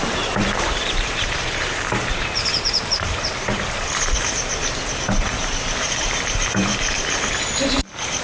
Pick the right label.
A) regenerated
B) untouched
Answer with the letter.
A